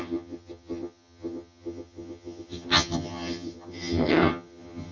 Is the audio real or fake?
fake